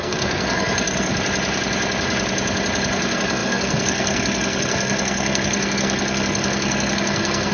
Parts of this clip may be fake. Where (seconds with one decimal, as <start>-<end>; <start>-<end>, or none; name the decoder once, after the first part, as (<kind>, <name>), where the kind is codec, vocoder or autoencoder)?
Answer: 0.0-1.1 (codec, SNAC); 2.9-7.5